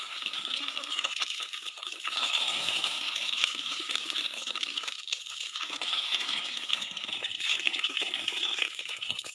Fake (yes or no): yes